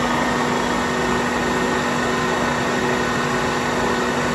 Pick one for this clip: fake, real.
real